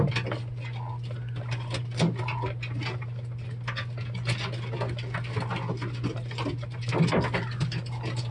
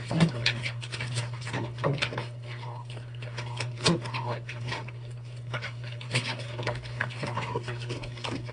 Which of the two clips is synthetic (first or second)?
second